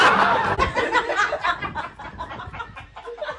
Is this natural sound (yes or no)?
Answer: yes